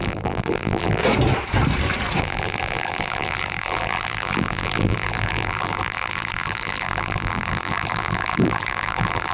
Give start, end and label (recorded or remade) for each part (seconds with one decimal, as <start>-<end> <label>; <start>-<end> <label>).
0.0-1.0 remade; 1.0-2.2 recorded; 2.2-9.3 remade